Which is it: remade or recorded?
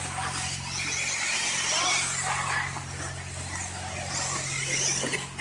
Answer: recorded